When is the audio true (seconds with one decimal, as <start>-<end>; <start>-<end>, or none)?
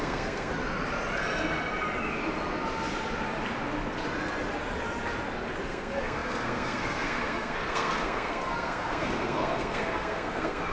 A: 0.5-5.6